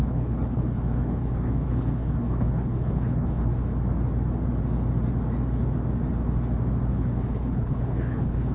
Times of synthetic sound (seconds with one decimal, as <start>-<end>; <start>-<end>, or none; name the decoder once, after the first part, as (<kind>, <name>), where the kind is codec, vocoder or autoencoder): 0.0-3.5 (codec, HILCodec); 6.9-8.5